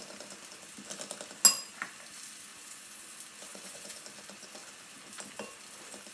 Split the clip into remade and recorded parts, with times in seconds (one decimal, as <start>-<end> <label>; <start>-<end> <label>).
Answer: 0.0-2.5 recorded; 2.5-3.0 remade; 3.0-3.5 recorded; 3.5-4.0 remade; 4.0-6.1 recorded